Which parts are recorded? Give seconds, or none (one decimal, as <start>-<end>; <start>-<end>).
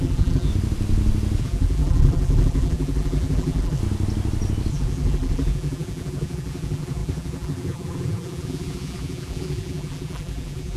0.5-1.4; 3.8-4.7